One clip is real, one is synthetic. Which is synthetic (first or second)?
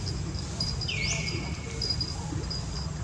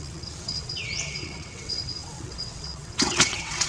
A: second